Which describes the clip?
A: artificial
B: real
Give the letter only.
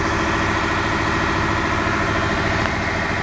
B